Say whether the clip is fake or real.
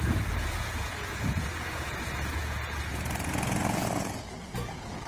fake